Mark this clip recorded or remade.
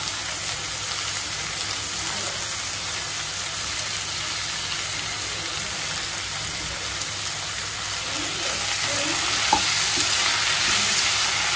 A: recorded